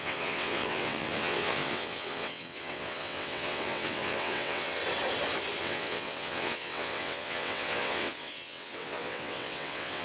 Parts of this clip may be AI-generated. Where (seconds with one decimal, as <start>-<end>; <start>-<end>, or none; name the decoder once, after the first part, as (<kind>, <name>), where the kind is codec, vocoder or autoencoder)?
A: 0.0-4.8 (vocoder, WaveNeXt); 5.6-10.0